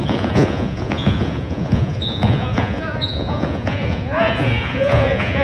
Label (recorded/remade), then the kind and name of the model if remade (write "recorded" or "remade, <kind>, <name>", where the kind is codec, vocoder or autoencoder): remade, vocoder, Vocos